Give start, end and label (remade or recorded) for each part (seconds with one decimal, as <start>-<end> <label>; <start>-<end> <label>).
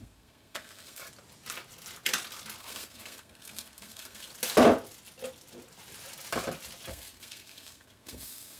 0.0-1.0 remade; 1.0-2.6 recorded; 2.6-4.3 remade; 4.3-6.9 recorded; 6.9-8.6 remade